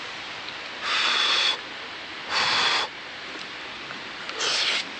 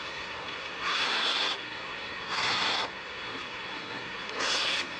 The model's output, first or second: second